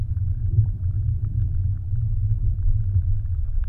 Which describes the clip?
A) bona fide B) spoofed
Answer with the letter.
A